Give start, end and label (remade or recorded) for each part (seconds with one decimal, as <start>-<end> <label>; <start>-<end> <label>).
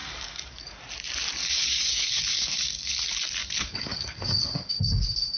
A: 0.0-0.8 remade; 0.8-1.4 recorded; 1.4-2.9 remade; 2.9-3.4 recorded; 3.4-4.7 remade; 4.7-5.4 recorded